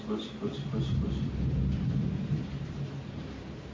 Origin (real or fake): fake